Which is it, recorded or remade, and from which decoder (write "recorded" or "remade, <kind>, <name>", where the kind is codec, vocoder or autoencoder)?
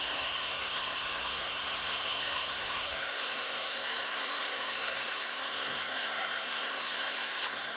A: remade, codec, SNAC